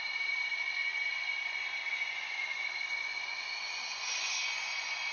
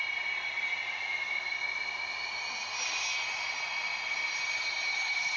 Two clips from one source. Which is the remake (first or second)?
first